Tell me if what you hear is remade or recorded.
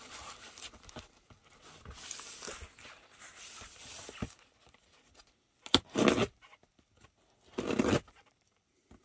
recorded